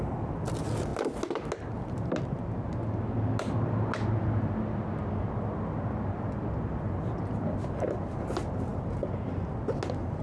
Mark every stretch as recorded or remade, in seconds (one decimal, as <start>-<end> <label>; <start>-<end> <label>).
0.0-10.2 recorded